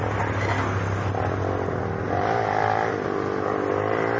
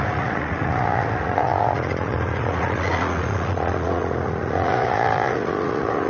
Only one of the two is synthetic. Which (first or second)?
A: second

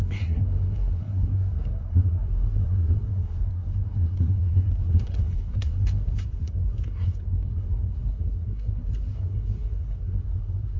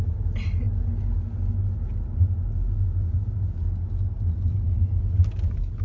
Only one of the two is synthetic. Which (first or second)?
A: first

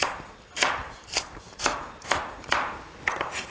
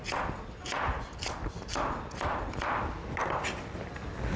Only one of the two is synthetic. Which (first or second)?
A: first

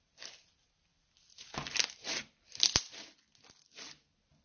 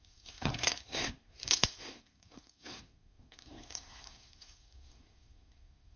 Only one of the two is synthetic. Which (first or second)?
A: second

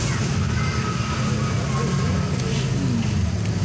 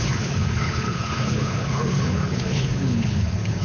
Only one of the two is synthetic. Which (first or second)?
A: second